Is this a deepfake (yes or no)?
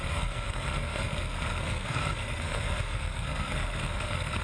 yes